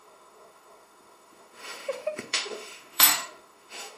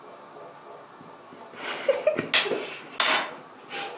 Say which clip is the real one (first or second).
second